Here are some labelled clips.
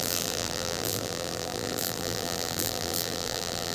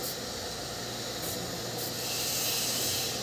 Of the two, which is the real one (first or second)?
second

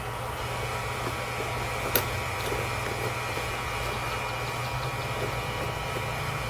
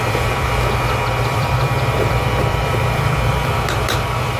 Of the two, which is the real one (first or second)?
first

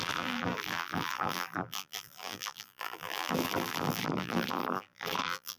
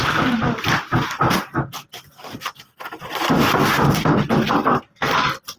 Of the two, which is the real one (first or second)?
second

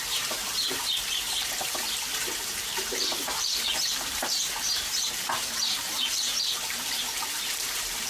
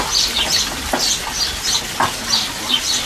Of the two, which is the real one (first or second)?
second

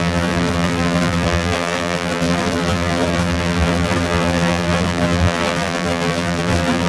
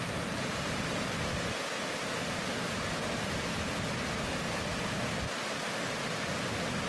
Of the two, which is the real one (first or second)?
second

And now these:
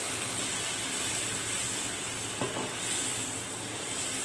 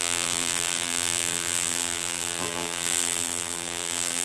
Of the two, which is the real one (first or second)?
first